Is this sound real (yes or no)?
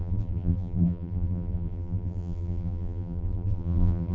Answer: no